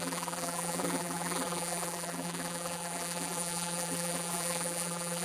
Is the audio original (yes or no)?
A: no